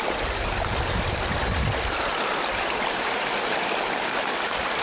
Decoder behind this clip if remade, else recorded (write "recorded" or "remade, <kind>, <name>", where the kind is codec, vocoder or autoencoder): recorded